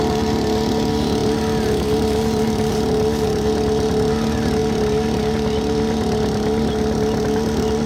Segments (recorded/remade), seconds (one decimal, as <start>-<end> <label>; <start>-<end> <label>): 0.0-7.9 recorded